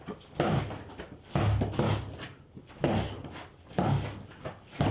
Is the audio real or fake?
real